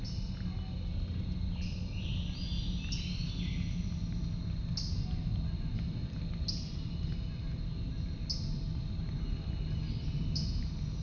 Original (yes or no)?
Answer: yes